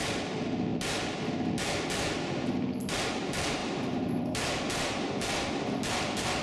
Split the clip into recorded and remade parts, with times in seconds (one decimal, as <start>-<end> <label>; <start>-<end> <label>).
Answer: 0.0-6.4 recorded